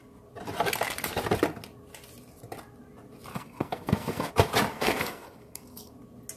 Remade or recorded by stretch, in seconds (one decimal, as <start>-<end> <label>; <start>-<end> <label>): 0.0-3.3 recorded; 3.3-4.3 remade; 4.3-4.7 recorded; 4.7-5.9 remade; 5.9-6.4 recorded